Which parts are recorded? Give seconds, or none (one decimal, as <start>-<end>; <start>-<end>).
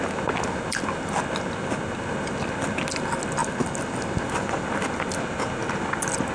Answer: 0.0-6.3